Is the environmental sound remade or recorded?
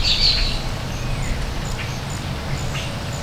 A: recorded